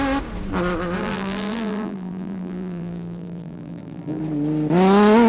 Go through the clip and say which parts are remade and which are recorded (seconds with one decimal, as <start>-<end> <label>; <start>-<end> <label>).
0.0-1.0 recorded; 1.0-4.2 remade; 4.2-5.3 recorded